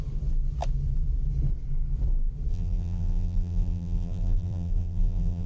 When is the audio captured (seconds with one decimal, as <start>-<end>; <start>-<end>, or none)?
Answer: 0.0-2.5